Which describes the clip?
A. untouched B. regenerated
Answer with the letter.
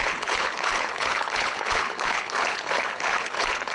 B